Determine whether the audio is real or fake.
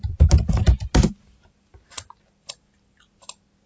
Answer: real